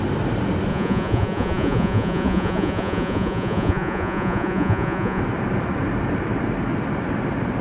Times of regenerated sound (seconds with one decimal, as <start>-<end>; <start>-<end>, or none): 0.7-5.2